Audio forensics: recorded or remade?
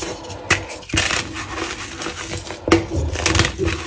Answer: recorded